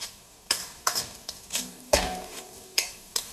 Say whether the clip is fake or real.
fake